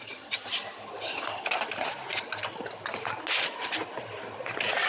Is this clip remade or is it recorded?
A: recorded